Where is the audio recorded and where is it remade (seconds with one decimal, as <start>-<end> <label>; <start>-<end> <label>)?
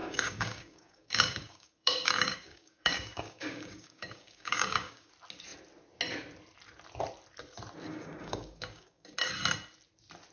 0.0-5.1 remade; 5.1-7.9 recorded; 7.9-9.1 remade; 9.1-10.3 recorded